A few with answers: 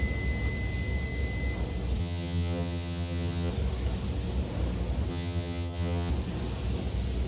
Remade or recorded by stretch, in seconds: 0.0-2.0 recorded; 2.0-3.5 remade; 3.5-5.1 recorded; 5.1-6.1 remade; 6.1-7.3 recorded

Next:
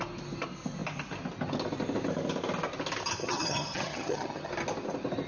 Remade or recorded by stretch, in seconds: 0.0-3.2 recorded; 3.2-4.5 remade; 4.5-5.3 recorded

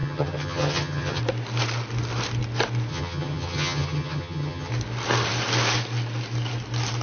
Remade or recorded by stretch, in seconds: 0.0-1.2 remade; 1.2-2.9 recorded; 2.9-4.7 remade; 4.7-7.0 recorded

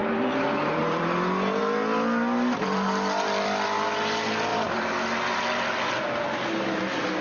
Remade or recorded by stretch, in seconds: 0.0-7.2 recorded

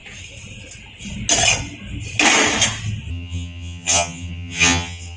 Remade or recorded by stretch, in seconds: 0.0-3.1 recorded; 3.1-5.2 remade

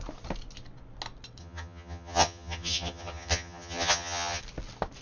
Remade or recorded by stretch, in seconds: 0.0-1.4 recorded; 1.4-4.4 remade; 4.4-5.0 recorded